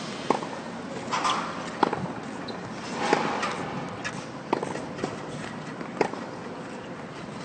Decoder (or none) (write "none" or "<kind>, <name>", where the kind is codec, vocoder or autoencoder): none